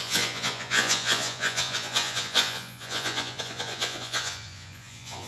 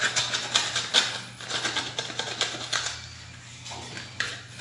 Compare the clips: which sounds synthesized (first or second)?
first